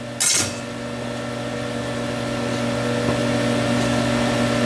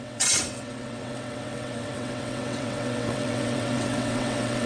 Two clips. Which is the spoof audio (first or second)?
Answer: second